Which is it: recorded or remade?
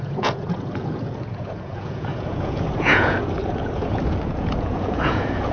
remade